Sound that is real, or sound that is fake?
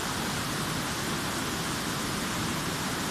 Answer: real